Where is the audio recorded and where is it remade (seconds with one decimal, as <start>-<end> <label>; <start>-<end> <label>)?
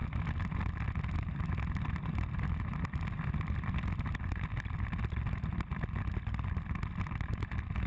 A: 0.0-7.9 recorded